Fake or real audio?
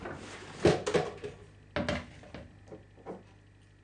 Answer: real